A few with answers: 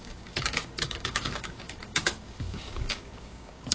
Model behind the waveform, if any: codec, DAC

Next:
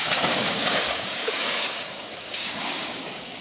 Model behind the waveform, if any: codec, DAC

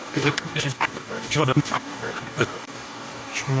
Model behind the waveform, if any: codec, DAC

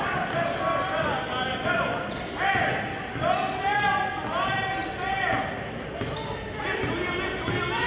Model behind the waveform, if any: none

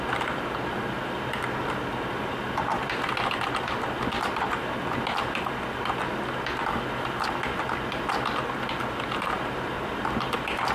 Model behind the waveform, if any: none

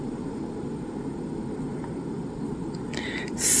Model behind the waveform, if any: none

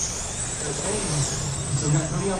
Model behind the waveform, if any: none